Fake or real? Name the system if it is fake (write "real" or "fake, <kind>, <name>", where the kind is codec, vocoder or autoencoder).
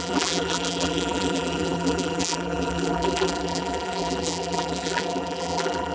fake, vocoder, BigVGAN v2